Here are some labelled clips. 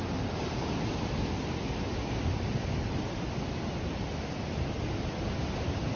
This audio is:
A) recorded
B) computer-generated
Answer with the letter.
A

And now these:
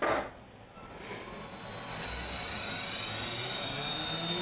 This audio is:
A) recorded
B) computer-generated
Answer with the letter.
A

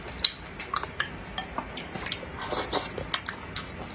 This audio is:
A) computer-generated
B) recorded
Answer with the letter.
B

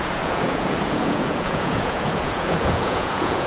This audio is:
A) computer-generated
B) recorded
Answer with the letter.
A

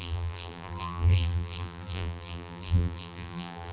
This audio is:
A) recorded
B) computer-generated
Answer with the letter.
B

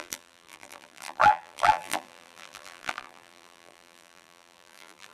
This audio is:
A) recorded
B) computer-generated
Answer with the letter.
B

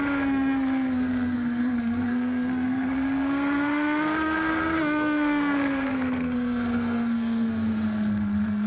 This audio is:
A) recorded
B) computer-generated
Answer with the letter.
B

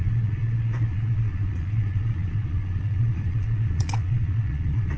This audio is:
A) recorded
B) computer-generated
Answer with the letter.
B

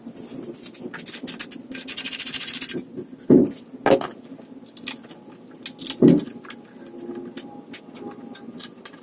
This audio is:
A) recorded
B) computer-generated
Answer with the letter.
A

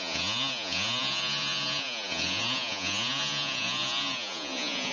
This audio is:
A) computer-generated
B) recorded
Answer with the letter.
A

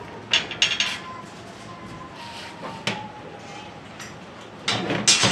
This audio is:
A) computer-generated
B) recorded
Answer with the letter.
B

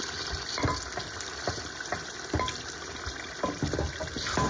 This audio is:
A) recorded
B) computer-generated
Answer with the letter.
A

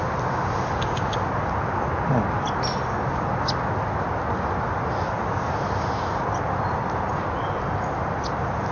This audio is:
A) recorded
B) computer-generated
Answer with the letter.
A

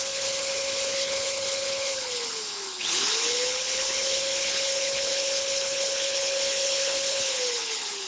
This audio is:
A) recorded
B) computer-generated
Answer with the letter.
B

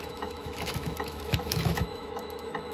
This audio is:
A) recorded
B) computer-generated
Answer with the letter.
B